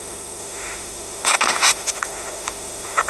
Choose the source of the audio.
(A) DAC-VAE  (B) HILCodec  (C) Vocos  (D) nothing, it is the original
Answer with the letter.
A